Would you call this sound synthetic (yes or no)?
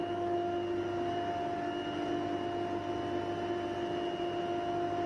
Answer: no